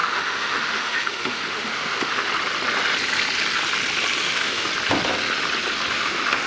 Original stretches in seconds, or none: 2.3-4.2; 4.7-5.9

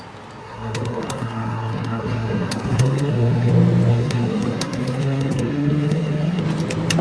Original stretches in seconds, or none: 0.0-0.4; 3.5-3.9; 6.4-7.0

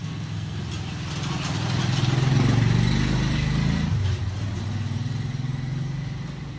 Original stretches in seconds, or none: 0.6-6.6

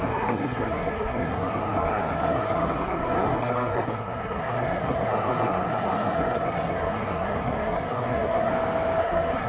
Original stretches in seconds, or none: 8.5-9.0